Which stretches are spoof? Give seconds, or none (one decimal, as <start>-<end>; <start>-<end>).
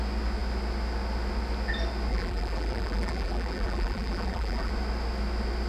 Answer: 2.1-4.7